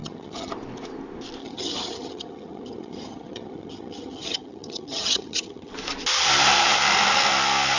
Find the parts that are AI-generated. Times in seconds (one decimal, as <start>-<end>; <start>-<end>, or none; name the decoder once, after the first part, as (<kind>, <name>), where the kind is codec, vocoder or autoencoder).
0.0-0.5 (vocoder, HiFi-GAN); 1.4-5.7